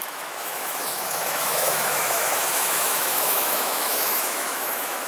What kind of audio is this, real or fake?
fake